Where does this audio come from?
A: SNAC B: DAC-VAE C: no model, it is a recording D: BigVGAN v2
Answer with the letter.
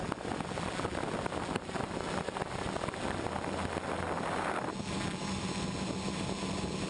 C